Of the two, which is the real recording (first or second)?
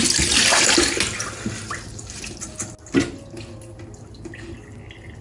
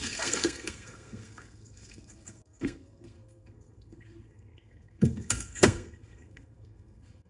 first